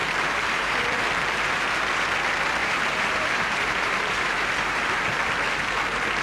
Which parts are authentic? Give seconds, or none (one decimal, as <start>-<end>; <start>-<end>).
1.8-2.6; 5.3-6.2

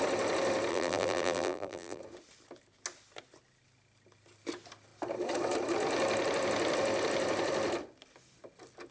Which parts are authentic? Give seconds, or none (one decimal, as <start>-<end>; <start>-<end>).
0.0-0.7; 2.0-8.9

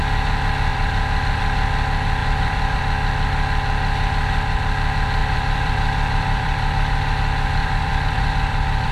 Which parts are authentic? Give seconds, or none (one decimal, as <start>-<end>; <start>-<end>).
0.0-0.7; 1.4-2.2; 2.8-5.2; 7.0-7.6

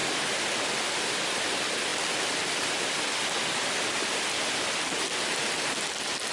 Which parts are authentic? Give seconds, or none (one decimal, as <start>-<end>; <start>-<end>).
1.0-1.9; 4.4-6.3

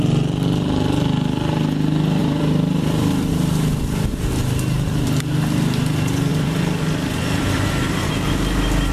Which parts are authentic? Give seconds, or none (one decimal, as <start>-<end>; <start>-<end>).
0.0-2.2; 3.3-6.3; 8.1-8.9

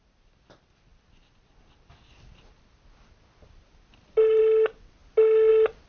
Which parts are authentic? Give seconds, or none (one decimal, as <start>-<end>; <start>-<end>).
0.0-5.9

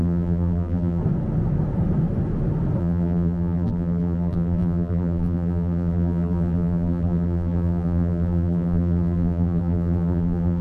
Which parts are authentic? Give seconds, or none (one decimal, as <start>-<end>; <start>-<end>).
1.0-2.8